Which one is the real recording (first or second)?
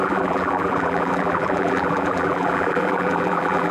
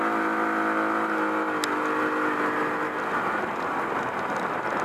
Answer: second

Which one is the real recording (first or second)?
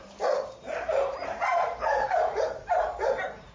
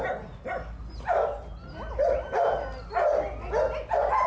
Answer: second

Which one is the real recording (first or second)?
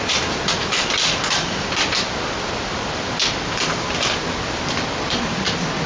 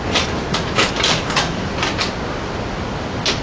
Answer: second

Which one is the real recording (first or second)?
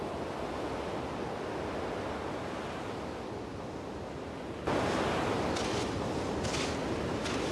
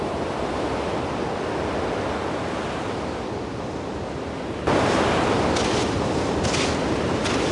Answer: first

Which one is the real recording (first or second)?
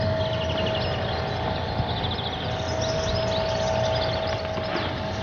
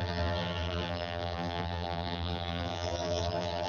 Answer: first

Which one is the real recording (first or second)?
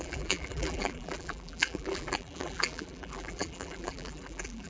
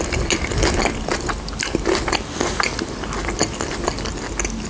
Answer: second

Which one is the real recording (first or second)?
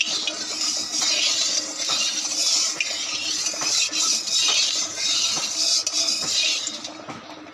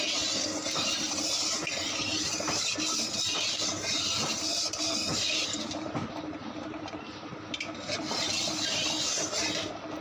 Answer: first